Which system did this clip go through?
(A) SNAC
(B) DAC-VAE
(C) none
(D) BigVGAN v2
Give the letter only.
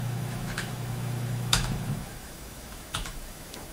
B